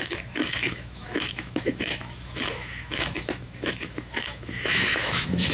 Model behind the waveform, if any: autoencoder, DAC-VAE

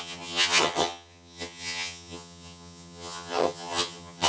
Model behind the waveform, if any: vocoder, HiFi-GAN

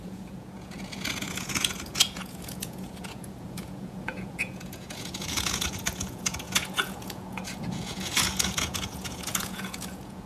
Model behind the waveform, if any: vocoder, Vocos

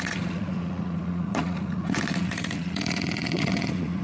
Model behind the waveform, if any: vocoder, Vocos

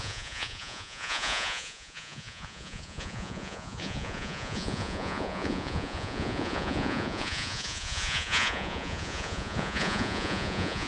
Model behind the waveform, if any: vocoder, Vocos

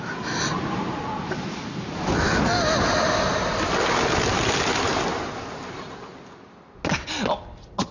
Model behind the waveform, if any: none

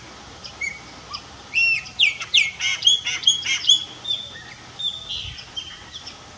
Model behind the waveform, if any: none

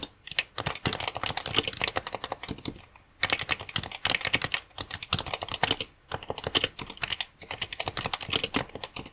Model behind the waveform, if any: none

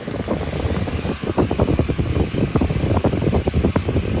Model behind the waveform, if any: codec, DAC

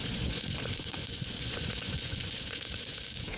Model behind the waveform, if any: vocoder, Vocos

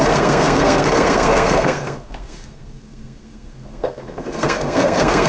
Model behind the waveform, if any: codec, SNAC